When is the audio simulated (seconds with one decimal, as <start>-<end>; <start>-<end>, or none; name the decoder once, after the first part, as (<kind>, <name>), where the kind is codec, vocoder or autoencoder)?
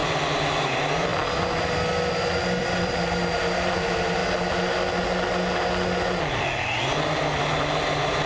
0.6-1.1 (vocoder, BigVGAN v2); 2.6-4.2; 7.4-8.3